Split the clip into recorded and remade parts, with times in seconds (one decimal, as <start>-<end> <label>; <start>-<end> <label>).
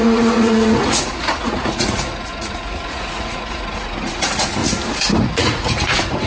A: 0.0-4.6 remade; 4.6-5.2 recorded; 5.2-6.3 remade